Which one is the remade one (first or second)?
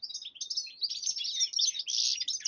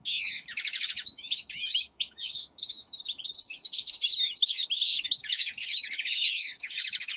second